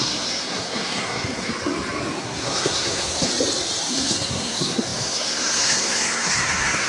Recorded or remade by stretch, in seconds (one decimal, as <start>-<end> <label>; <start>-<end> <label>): 0.0-1.5 remade; 1.5-2.2 recorded; 2.2-3.3 remade; 3.3-3.9 recorded; 3.9-6.9 remade